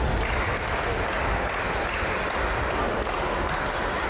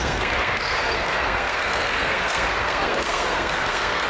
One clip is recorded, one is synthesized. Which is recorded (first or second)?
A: first